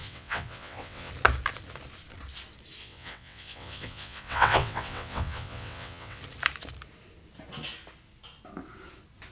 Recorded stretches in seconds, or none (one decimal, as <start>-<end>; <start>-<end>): 1.1-2.8; 6.2-9.3